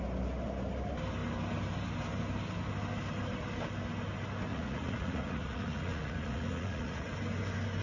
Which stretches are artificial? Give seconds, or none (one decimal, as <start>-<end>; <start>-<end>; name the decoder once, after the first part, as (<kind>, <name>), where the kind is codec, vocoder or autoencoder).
4.5-7.1 (vocoder, Vocos)